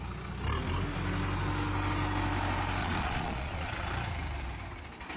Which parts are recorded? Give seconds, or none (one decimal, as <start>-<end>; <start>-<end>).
0.0-2.8; 3.9-5.2